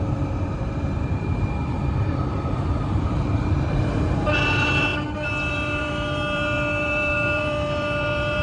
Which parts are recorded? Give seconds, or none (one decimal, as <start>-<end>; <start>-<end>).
4.9-5.5